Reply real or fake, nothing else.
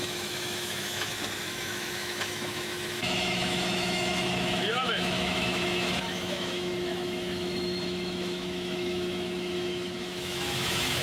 fake